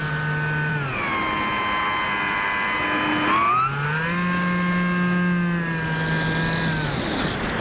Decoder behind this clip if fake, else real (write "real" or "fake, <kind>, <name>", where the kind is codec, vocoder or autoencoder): real